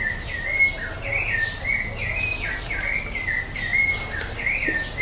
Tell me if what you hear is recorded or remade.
recorded